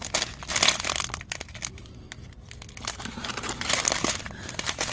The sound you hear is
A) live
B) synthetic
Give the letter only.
A